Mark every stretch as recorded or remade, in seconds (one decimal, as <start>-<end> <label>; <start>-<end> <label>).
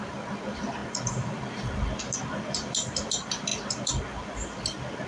0.0-5.1 recorded